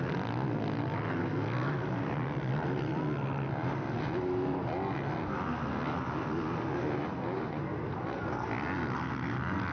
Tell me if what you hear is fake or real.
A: real